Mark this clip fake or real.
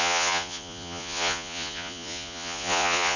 fake